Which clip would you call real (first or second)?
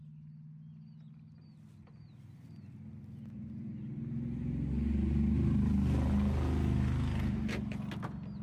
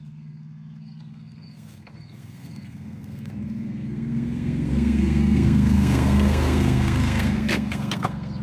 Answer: first